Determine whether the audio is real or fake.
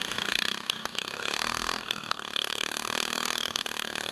fake